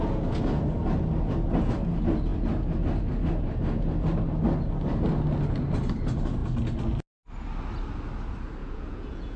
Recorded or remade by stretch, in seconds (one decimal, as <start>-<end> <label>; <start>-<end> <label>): 0.0-8.6 recorded; 8.6-9.4 remade